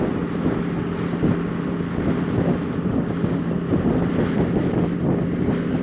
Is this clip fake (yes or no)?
no